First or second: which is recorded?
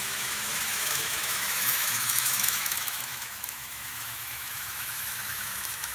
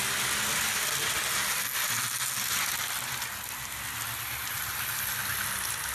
second